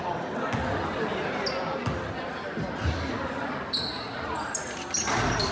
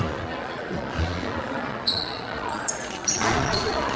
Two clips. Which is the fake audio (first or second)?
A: second